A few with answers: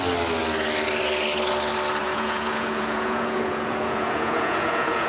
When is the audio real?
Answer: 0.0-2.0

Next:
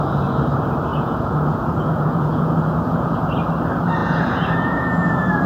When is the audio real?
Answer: 0.0-0.9; 3.3-4.0; 5.1-5.5

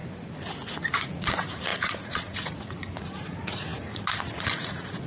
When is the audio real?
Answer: 0.0-0.9

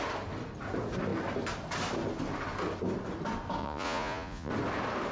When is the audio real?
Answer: 0.0-3.6; 4.5-5.1

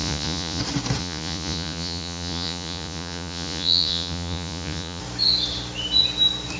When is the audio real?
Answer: 0.6-1.0; 5.0-6.6

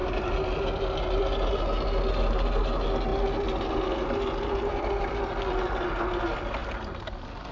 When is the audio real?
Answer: 0.0-7.5

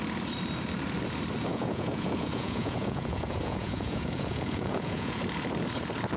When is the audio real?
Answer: 0.0-1.5; 5.2-6.2